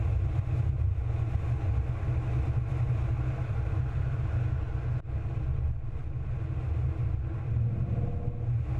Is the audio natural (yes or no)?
yes